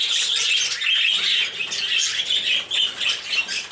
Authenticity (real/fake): real